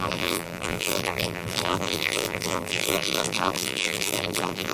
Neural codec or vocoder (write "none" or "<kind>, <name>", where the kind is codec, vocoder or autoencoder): vocoder, BigVGAN v2